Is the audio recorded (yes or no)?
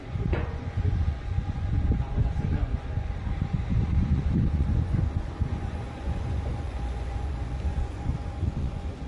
no